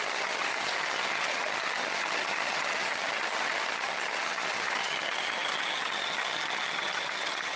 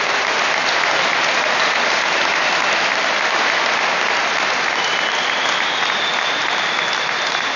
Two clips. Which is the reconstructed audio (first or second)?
first